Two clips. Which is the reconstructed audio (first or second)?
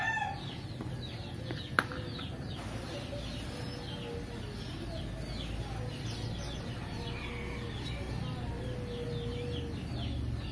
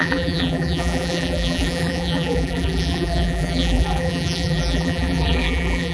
second